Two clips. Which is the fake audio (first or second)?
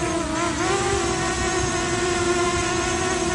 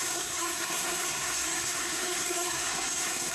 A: second